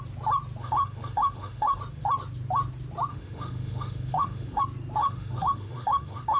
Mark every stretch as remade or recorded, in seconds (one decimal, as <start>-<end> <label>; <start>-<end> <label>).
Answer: 0.0-0.6 recorded; 0.6-1.8 remade; 1.8-3.1 recorded; 3.1-4.6 remade; 4.6-5.0 recorded; 5.0-6.4 remade